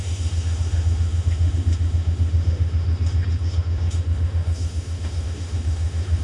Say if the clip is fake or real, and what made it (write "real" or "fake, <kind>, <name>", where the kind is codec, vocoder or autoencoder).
fake, autoencoder, DAC-VAE